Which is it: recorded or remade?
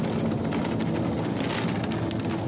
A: recorded